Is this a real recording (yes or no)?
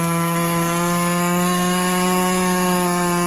no